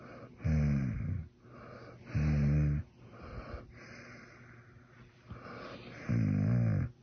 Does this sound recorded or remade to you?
recorded